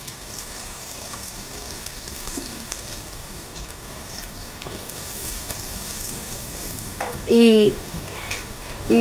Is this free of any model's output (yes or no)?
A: no